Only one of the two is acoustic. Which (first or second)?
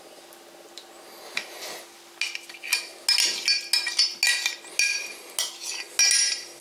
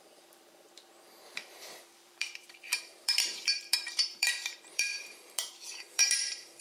first